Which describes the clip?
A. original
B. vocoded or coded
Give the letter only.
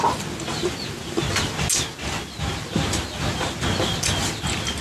A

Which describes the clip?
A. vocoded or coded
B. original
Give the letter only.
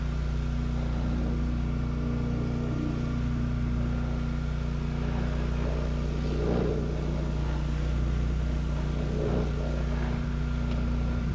B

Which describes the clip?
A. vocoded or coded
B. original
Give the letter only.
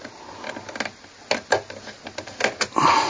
B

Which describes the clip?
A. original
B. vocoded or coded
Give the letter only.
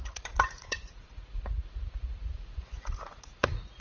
B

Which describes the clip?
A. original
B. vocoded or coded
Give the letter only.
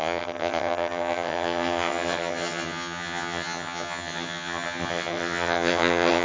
B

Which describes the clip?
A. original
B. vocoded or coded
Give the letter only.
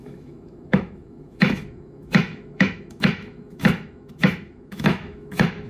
B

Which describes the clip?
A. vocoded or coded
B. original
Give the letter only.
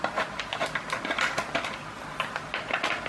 B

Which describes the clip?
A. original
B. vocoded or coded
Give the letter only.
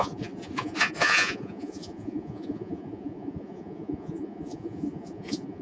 B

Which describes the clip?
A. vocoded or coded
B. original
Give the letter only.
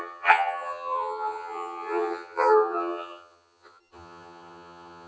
A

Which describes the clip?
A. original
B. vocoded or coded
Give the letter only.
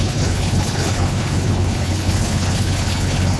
B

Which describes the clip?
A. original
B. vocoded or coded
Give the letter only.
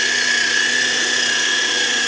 B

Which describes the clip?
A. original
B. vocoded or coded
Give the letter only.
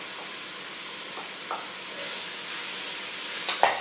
A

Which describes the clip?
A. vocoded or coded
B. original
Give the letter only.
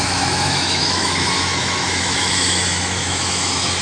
A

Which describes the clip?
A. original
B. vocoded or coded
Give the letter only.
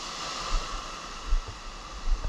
A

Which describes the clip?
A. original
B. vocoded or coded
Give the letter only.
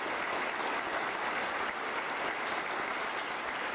A